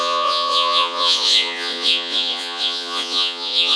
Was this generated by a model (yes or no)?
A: yes